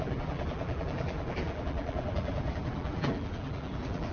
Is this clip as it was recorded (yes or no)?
no